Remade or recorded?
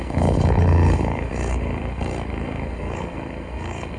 remade